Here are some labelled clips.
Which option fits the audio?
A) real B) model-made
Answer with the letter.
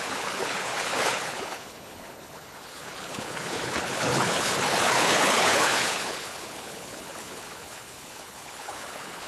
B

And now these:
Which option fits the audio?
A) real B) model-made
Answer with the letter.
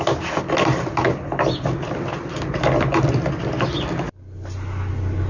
A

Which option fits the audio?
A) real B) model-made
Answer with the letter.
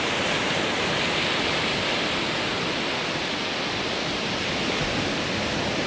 A